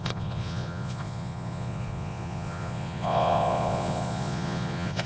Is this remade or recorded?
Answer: remade